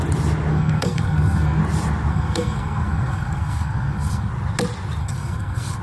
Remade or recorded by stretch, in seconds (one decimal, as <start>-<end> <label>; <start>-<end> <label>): 0.0-0.5 recorded; 0.5-1.6 remade; 1.6-2.1 recorded; 2.1-4.3 remade; 4.3-5.0 recorded; 5.0-5.8 remade